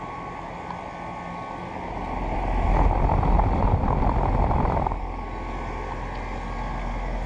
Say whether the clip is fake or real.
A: real